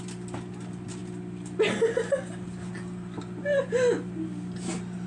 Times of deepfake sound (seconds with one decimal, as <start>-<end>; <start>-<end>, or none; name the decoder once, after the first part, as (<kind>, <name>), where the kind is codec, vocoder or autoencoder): none